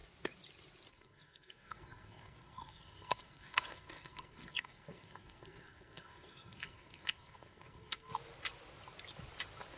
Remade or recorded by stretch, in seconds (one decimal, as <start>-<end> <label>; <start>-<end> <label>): 0.0-0.9 recorded; 0.9-8.1 remade; 8.1-9.8 recorded